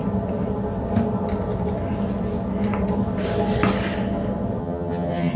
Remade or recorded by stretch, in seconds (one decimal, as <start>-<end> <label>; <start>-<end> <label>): 0.0-4.6 recorded; 4.6-5.4 remade